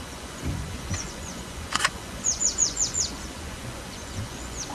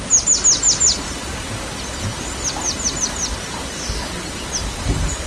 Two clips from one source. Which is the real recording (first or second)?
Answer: second